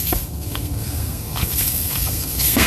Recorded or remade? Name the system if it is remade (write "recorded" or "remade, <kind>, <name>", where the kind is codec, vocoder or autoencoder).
remade, codec, SNAC